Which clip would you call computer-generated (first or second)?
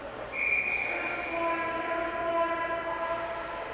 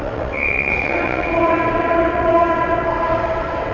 second